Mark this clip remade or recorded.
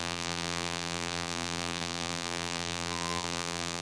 remade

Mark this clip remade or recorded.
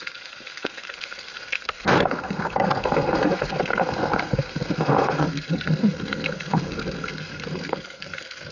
remade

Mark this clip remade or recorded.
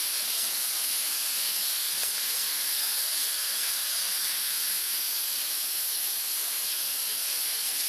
remade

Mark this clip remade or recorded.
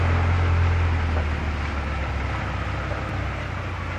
recorded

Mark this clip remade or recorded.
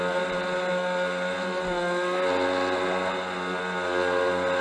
recorded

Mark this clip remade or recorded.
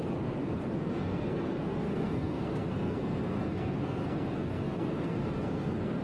remade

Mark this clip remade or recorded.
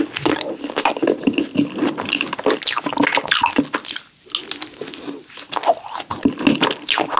recorded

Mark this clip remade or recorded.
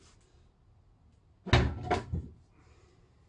recorded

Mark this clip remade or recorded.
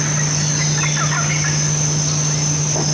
recorded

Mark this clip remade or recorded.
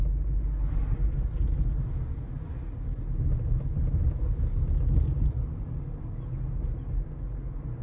recorded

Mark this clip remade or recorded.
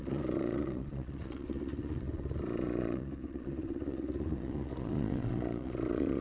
remade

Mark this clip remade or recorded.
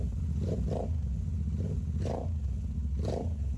recorded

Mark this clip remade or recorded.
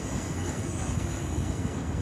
remade